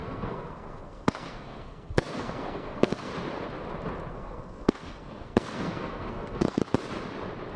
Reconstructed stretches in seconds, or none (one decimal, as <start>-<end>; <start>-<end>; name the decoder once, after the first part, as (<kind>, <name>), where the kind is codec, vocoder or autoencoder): 0.0-3.1 (codec, SNAC); 4.1-6.6